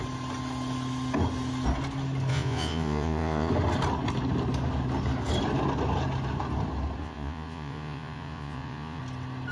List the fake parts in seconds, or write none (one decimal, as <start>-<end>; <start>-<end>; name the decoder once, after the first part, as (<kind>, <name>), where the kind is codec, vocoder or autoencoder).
2.3-3.5 (vocoder, Vocos); 7.0-9.0